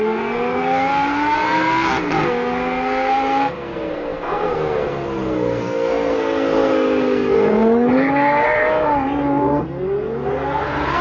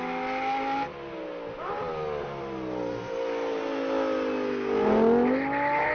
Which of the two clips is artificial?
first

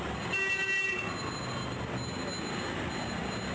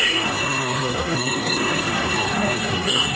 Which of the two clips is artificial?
second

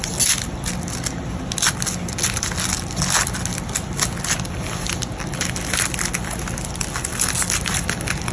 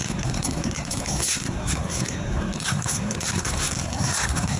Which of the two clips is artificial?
second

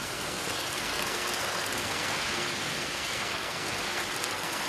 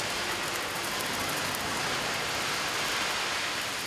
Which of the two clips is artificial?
first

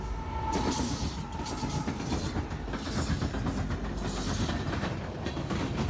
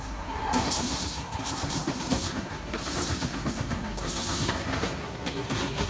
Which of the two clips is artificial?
second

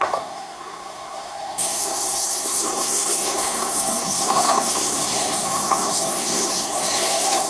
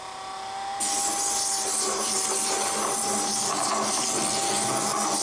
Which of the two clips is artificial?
first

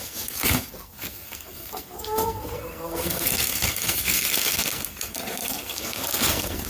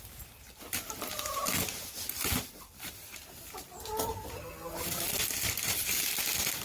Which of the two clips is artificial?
first